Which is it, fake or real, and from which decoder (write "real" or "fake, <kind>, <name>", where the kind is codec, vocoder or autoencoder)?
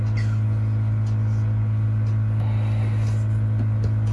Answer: real